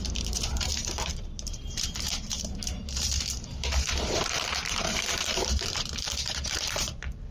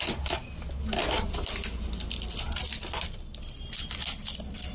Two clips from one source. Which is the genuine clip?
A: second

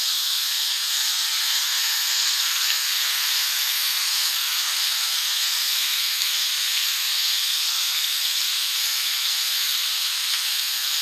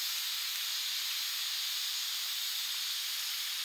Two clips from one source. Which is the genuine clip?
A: second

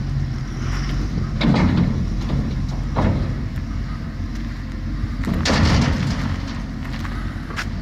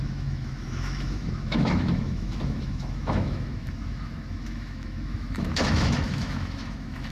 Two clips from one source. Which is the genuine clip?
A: first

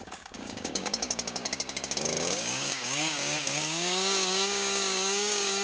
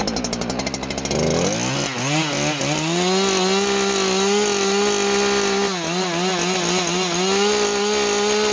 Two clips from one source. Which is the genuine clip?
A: second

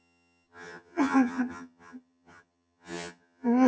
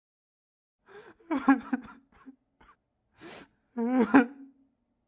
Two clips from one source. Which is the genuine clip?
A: second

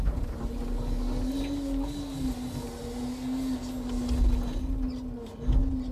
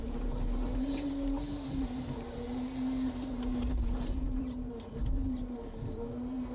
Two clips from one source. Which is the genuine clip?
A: first